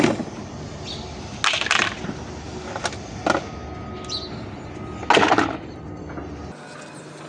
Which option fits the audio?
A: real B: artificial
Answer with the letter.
A